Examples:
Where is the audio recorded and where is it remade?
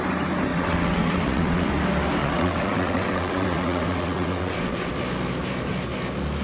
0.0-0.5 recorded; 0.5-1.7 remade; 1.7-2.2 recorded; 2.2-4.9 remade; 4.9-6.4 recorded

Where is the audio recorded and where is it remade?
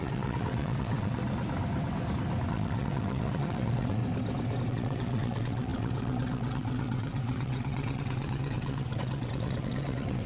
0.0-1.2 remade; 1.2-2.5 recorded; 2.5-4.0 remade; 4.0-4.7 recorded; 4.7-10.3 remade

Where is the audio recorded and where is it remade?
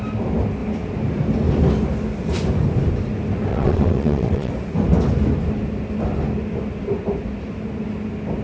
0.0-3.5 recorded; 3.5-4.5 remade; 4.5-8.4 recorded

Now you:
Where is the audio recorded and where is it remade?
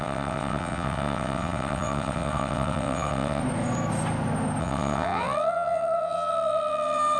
0.0-3.4 remade; 3.4-4.6 recorded; 4.6-7.2 remade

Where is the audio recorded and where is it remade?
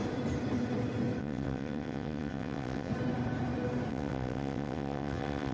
0.0-1.2 recorded; 1.2-2.9 remade; 2.9-3.9 recorded; 3.9-5.5 remade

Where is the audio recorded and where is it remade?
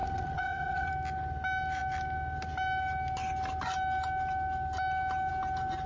0.0-0.9 remade; 0.9-5.9 recorded